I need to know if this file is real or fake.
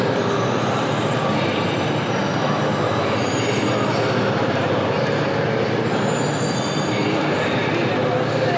real